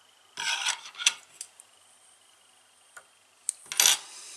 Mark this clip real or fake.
real